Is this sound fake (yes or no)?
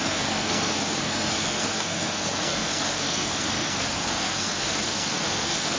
yes